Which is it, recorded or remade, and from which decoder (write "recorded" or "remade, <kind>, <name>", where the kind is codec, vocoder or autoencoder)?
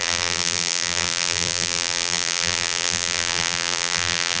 remade, vocoder, BigVGAN v2